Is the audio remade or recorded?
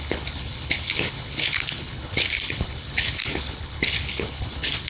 remade